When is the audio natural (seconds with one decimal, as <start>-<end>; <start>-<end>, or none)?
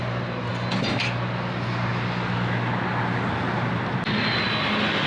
0.0-5.1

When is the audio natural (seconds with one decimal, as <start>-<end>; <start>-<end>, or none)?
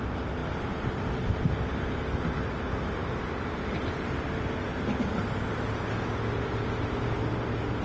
0.0-7.8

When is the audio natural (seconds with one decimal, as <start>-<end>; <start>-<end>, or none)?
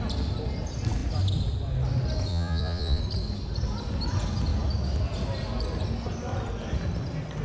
0.0-2.3; 3.0-7.4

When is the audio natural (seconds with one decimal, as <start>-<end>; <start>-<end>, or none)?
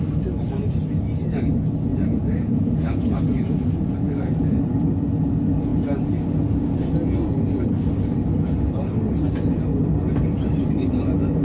0.0-1.9; 4.6-11.4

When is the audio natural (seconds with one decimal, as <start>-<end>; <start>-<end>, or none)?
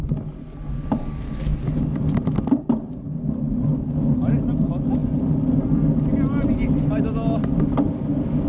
0.0-8.5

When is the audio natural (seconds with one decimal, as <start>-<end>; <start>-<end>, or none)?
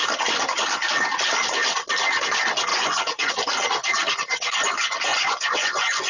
0.0-2.7; 3.3-5.1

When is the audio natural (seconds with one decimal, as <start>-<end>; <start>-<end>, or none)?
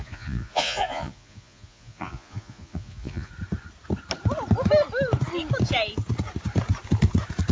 3.3-7.5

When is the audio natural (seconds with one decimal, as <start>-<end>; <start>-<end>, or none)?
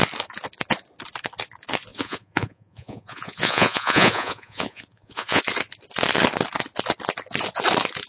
0.0-1.9; 5.4-8.1